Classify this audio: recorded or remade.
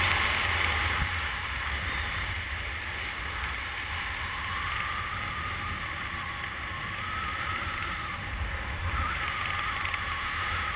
recorded